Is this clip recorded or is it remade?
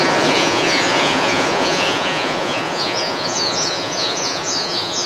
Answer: remade